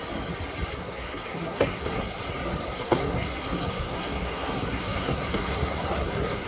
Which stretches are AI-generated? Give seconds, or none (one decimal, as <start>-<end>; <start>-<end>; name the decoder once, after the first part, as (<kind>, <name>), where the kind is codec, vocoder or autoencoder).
0.7-2.2 (codec, SNAC); 2.7-6.5